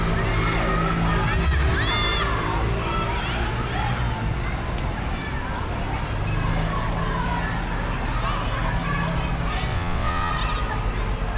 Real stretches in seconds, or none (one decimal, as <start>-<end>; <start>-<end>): 0.0-9.7; 10.3-11.4